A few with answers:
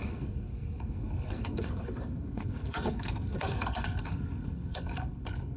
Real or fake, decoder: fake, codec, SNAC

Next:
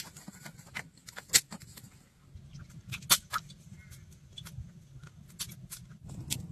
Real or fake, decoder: real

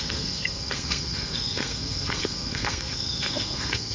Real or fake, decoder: fake, codec, SNAC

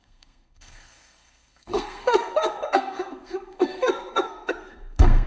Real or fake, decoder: fake, codec, SNAC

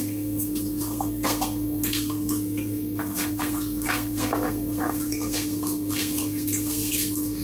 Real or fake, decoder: fake, codec, SNAC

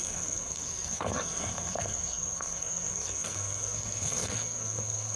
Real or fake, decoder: fake, codec, SNAC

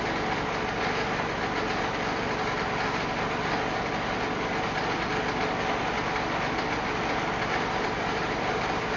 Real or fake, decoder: real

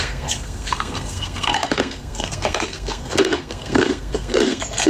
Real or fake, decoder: fake, codec, SNAC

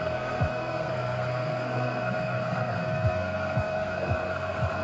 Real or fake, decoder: fake, codec, SNAC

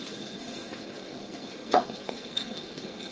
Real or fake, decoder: fake, codec, SNAC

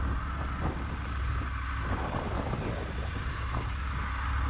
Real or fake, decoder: real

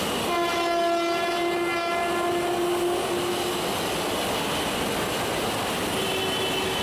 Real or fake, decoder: real